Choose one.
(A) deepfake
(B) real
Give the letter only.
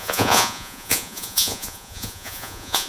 A